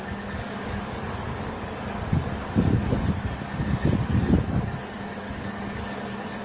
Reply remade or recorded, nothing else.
remade